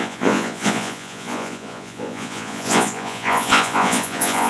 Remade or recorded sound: remade